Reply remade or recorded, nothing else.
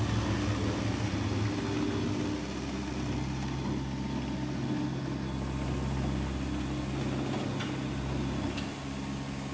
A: recorded